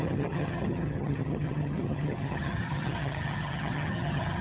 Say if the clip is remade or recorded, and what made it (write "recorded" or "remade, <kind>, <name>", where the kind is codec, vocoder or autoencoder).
remade, vocoder, HiFi-GAN